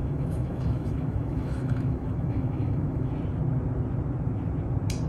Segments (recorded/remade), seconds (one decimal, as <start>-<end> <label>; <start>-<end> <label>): 0.0-3.1 remade; 3.1-5.1 recorded

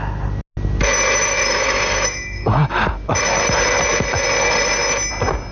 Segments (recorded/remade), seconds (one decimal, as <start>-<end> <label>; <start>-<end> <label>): 0.0-1.4 recorded; 1.4-2.8 remade; 2.8-5.5 recorded

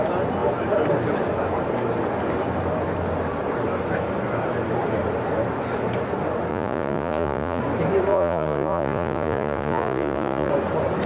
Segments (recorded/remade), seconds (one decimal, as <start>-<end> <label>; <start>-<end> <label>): 0.0-6.5 recorded; 6.5-7.6 remade; 7.6-8.1 recorded; 8.1-10.5 remade; 10.5-11.1 recorded

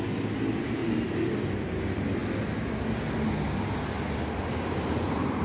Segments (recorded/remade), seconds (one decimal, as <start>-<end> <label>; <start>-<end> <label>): 0.0-0.8 remade; 0.8-1.3 recorded; 1.3-2.2 remade; 2.2-5.0 recorded; 5.0-5.4 remade

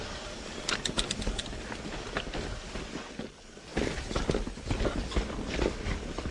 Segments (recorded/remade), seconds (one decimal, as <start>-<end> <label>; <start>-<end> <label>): 0.0-6.3 recorded

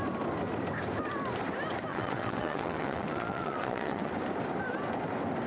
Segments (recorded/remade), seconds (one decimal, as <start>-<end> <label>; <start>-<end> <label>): 0.0-1.9 recorded; 1.9-4.1 remade; 4.1-5.5 recorded

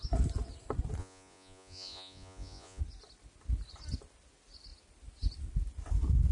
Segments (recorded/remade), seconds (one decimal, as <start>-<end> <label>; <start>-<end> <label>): 0.0-1.0 recorded; 1.0-2.8 remade; 2.8-6.3 recorded

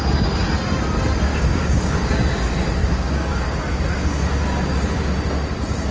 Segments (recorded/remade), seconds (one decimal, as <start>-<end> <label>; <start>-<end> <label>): 0.0-1.3 recorded; 1.3-2.2 remade; 2.2-2.8 recorded; 2.8-3.4 remade; 3.4-5.9 recorded